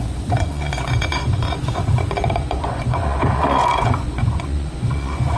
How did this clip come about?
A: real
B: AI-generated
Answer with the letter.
B